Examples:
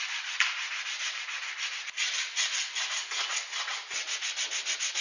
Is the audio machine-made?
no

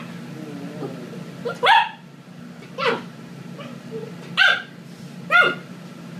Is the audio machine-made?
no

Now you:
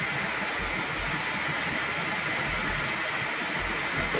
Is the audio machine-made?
no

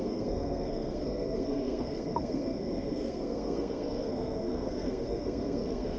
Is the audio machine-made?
yes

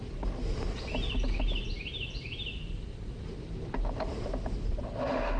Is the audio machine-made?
no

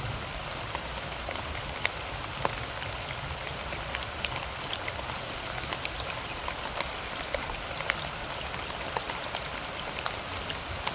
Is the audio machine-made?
no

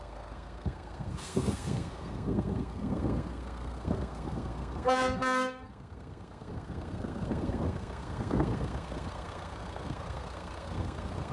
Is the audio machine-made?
yes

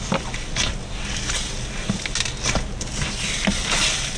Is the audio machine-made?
no